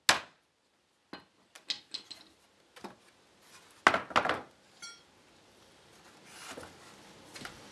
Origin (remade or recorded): recorded